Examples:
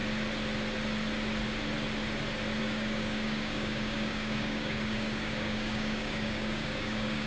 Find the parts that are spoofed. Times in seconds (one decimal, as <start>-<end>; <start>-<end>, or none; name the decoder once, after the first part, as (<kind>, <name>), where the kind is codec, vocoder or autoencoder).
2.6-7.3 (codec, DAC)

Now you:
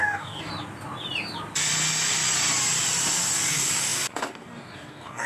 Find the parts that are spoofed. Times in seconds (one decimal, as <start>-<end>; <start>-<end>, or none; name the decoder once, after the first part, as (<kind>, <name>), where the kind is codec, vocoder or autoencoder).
0.0-0.5 (codec, DAC); 3.5-5.3

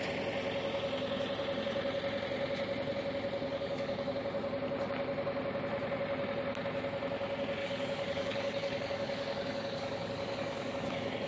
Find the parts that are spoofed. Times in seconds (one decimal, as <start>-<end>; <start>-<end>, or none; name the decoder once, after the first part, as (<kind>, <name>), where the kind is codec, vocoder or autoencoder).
3.5-4.1 (codec, DAC); 7.6-11.3